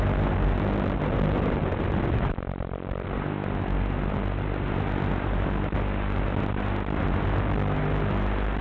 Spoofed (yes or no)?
no